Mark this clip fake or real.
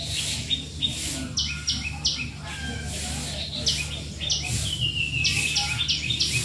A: real